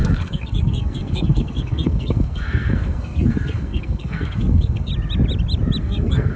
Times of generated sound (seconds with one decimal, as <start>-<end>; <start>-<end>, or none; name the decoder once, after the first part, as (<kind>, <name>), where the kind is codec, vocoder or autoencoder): 0.0-4.9 (codec, SNAC); 5.8-6.4